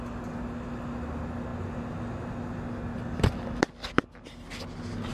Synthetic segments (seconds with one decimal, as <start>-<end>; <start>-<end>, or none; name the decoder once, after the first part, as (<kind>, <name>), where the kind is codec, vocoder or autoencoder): none